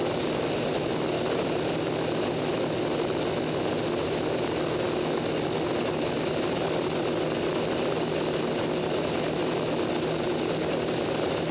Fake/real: real